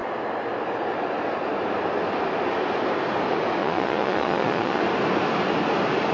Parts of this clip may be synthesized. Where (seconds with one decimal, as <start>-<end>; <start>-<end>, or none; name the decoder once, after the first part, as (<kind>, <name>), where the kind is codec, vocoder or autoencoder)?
3.6-4.8 (vocoder, Vocos)